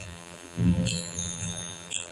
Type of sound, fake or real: fake